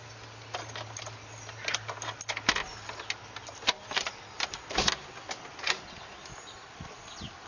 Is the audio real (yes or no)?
yes